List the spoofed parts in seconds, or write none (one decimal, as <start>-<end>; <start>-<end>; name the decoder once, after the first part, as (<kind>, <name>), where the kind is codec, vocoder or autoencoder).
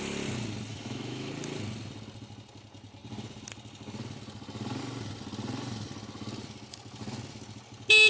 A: 0.7-1.3 (autoencoder, DAC-VAE)